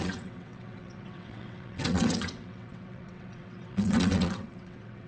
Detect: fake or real fake